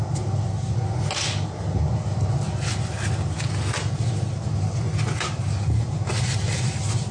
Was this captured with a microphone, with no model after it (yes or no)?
yes